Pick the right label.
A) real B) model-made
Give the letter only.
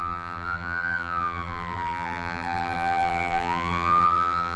B